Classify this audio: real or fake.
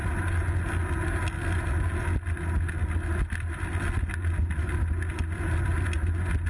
real